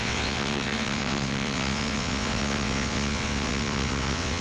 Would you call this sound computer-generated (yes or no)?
yes